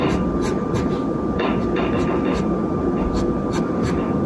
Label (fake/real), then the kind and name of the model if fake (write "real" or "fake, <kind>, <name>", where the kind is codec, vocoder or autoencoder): real